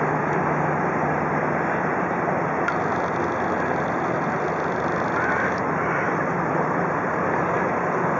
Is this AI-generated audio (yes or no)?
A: no